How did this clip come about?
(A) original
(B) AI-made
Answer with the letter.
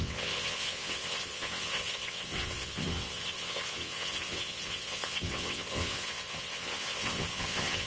B